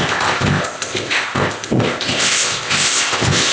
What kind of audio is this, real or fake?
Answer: fake